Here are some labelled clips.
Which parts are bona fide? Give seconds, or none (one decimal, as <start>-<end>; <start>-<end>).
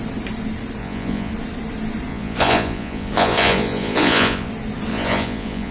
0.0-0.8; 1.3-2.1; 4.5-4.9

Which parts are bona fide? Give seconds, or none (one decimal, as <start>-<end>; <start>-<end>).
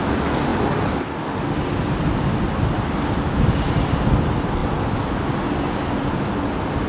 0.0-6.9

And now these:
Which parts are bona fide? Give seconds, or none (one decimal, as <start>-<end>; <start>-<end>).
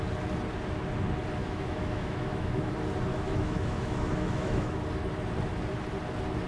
0.0-1.4; 2.7-3.1; 4.8-6.5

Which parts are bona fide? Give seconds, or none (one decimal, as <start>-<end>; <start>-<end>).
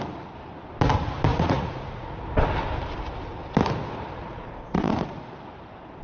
0.0-1.3; 2.1-4.2; 5.3-6.0